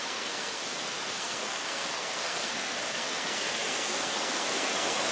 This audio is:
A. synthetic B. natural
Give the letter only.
A